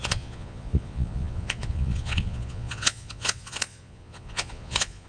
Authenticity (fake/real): fake